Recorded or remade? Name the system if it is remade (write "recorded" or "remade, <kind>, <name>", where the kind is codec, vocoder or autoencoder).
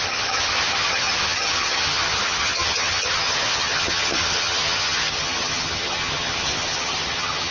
remade, vocoder, HiFi-GAN